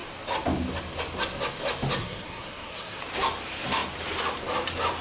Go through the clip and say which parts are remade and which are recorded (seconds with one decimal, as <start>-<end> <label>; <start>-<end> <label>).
0.0-2.0 recorded; 2.0-3.0 remade; 3.0-5.0 recorded